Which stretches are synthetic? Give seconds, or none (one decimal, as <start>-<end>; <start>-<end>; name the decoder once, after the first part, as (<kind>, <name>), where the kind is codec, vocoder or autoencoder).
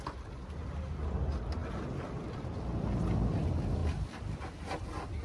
3.8-4.8 (vocoder, BigVGAN v2)